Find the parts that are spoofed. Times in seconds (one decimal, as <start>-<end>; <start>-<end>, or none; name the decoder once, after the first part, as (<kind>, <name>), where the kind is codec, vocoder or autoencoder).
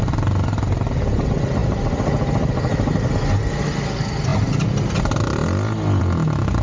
none